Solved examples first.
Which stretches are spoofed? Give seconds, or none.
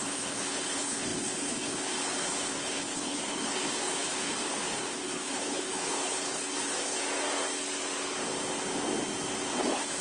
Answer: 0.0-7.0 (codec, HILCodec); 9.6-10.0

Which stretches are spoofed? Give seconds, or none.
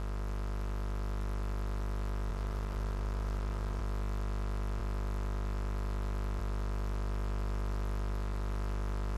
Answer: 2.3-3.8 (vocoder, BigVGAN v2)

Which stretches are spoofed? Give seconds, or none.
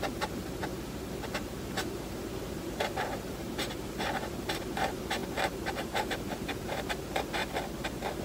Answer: 0.0-7.4 (vocoder, BigVGAN v2)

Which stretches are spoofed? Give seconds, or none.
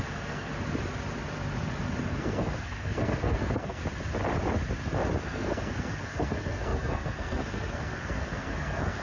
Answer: 0.0-0.5 (codec, SNAC); 2.2-3.8; 5.2-9.0